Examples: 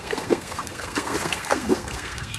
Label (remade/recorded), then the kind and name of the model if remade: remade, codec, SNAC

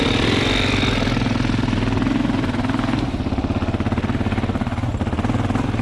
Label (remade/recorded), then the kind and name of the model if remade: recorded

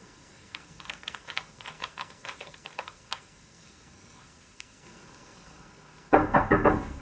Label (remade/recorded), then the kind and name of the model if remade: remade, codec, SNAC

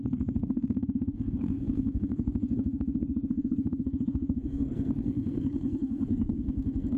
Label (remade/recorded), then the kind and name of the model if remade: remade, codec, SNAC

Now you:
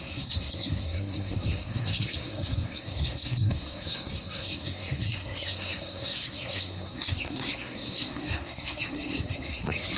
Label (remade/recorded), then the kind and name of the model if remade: remade, codec, SNAC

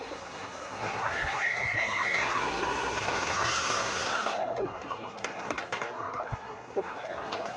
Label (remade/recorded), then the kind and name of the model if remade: remade, codec, SNAC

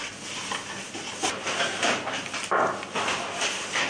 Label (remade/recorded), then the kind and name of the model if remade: recorded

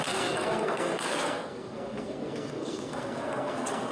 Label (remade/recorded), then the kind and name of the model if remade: remade, codec, SNAC